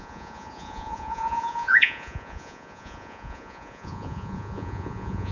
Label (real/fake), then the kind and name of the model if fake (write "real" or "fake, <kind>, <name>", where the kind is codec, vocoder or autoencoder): fake, vocoder, Vocos